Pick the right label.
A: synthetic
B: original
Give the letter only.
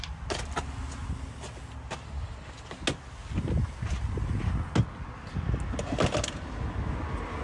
B